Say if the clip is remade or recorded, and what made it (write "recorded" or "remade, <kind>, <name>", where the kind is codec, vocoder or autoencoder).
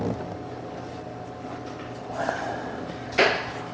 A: recorded